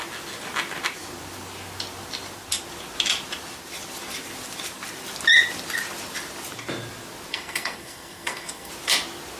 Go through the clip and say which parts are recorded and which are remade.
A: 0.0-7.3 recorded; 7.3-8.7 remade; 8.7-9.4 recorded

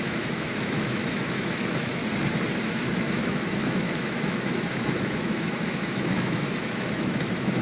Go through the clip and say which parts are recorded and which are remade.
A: 0.0-2.0 remade; 2.0-2.6 recorded; 2.6-7.6 remade

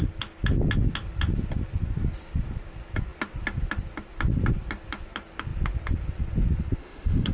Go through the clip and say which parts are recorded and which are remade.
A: 0.0-6.8 recorded; 6.8-7.3 remade

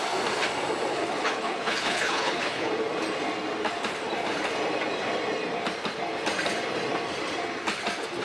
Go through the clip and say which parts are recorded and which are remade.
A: 0.0-0.9 recorded; 0.9-2.7 remade; 2.7-8.2 recorded